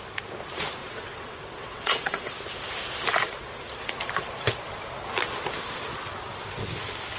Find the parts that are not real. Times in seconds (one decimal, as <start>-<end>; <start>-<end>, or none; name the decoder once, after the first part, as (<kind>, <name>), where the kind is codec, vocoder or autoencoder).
0.8-2.3 (vocoder, WaveNeXt)